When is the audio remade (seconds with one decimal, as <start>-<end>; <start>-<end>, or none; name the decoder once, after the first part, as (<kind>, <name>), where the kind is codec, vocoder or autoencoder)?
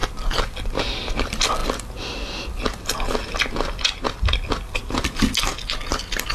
none